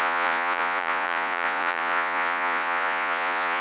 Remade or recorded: remade